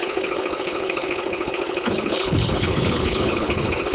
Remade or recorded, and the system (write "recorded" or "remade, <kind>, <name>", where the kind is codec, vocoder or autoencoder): remade, codec, HILCodec